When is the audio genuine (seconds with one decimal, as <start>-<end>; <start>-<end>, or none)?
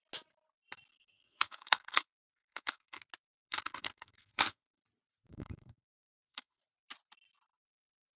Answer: 0.0-0.9; 3.0-3.5; 4.8-5.3; 6.6-8.2